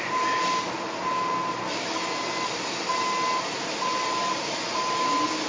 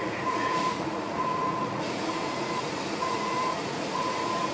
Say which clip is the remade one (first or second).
second